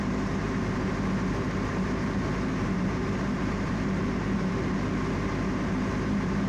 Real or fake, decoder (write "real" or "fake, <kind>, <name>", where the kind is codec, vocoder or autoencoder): fake, vocoder, BigVGAN v2